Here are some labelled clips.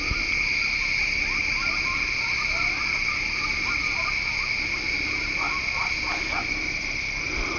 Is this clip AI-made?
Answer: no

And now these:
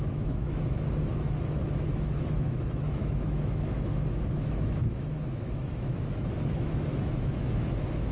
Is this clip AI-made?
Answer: yes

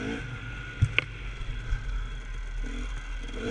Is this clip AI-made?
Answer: no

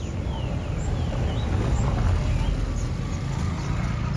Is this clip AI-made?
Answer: no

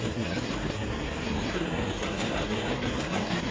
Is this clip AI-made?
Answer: yes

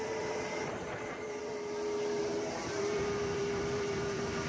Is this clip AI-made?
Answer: yes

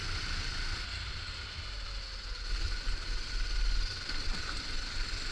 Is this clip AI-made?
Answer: no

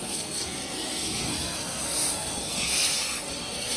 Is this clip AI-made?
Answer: yes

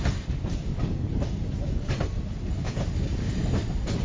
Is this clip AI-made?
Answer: no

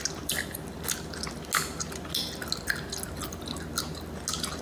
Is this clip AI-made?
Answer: no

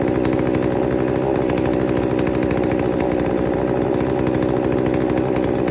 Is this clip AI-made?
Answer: no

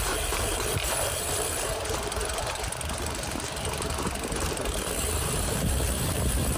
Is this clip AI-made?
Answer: yes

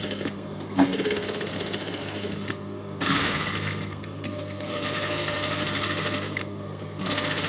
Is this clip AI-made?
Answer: yes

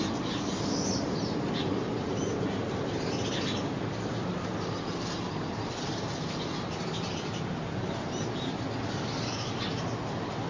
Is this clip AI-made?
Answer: no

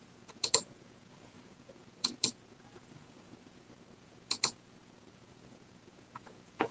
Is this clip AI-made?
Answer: yes